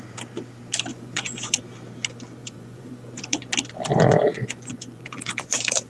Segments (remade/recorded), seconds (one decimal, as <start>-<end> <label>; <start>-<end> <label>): 0.0-0.9 recorded; 0.9-1.6 remade; 1.6-2.4 recorded; 2.4-3.4 remade; 3.4-3.9 recorded; 3.9-5.9 remade